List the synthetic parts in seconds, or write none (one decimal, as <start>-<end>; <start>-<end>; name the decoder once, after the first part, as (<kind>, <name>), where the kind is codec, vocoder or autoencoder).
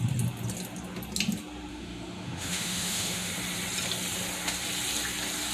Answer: 1.7-3.3 (autoencoder, DAC-VAE)